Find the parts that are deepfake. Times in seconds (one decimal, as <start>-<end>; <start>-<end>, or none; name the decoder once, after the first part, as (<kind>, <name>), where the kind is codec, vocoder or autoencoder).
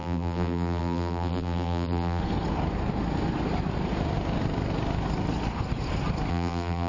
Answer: 0.0-2.2 (vocoder, BigVGAN v2); 6.3-6.9